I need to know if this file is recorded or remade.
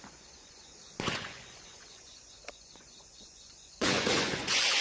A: remade